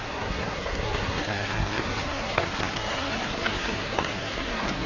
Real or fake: fake